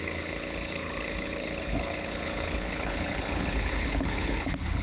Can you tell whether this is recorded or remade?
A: remade